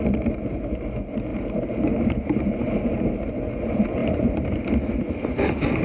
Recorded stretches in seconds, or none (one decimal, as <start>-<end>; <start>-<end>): 0.0-1.3; 3.3-4.0; 4.6-5.8